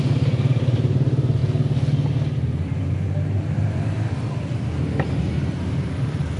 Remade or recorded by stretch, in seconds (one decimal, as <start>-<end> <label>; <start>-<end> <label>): 0.0-1.4 remade; 1.4-5.2 recorded; 5.2-6.4 remade